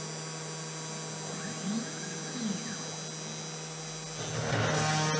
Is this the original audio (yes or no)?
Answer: yes